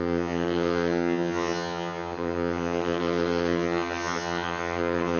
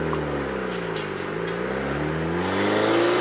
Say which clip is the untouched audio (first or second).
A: second